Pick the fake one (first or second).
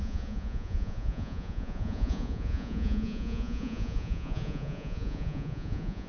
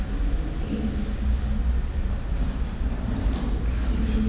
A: first